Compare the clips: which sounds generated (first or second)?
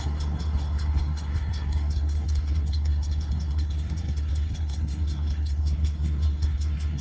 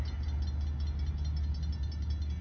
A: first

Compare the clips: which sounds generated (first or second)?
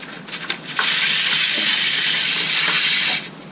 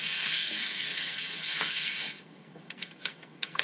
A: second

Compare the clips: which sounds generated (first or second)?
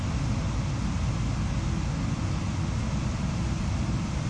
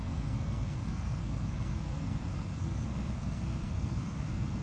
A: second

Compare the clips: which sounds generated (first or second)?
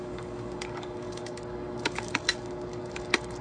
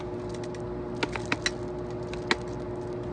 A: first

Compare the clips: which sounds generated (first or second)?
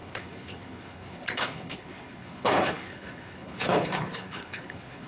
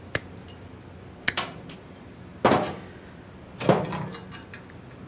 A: first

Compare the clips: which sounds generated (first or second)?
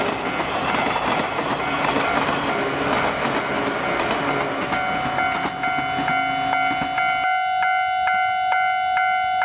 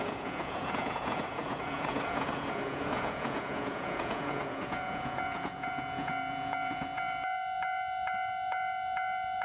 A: second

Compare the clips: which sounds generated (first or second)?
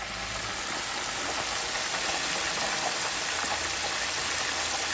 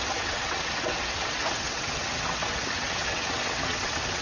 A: second